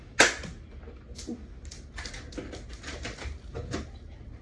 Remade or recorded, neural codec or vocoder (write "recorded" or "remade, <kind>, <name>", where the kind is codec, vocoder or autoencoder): recorded